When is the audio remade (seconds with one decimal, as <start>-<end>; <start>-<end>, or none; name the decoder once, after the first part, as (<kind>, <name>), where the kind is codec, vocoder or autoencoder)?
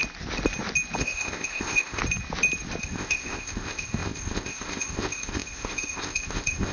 1.0-2.0 (codec, ZipCodec); 2.8-6.7